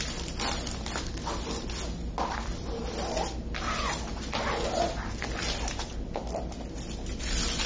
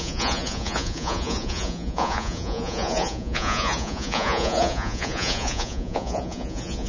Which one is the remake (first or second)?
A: second